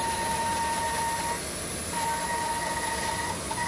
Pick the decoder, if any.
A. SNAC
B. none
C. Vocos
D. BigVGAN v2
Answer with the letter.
B